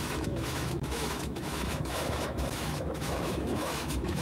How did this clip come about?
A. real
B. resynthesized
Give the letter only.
B